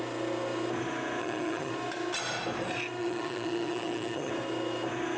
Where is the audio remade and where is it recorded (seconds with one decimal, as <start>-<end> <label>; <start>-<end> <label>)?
0.0-1.2 recorded; 1.2-1.7 remade; 1.7-3.0 recorded; 3.0-4.3 remade; 4.3-5.2 recorded